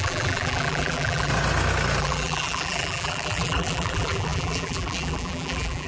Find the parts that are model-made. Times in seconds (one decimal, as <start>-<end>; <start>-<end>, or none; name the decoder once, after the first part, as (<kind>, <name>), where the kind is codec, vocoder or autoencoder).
0.0-1.3 (vocoder, BigVGAN v2); 2.0-5.9

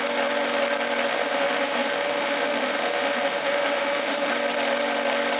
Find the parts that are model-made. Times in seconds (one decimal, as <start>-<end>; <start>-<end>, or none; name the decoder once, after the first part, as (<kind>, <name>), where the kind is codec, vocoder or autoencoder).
1.1-4.3 (autoencoder, DAC-VAE)

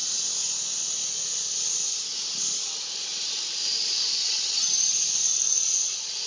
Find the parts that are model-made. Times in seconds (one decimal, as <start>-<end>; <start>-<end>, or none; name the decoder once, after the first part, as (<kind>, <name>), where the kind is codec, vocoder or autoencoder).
4.2-4.7 (vocoder, HiFi-GAN)

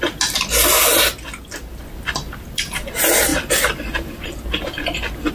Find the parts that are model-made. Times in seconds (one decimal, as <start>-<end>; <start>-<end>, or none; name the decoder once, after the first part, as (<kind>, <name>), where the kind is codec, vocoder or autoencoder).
none

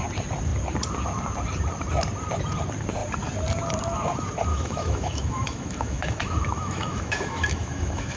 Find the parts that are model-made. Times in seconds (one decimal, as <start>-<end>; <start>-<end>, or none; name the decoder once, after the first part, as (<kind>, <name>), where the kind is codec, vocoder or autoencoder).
4.5-8.2 (autoencoder, DAC-VAE)